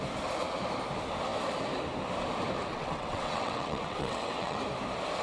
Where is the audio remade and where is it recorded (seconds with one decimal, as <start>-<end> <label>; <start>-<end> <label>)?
0.0-2.7 recorded; 2.7-4.6 remade; 4.6-5.2 recorded